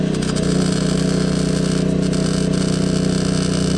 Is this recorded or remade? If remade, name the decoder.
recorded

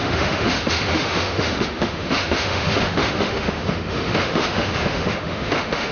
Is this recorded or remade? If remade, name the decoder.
remade, autoencoder, DAC-VAE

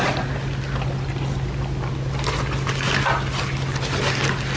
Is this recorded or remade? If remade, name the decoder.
recorded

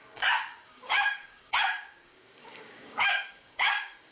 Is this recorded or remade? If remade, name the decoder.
remade, codec, DAC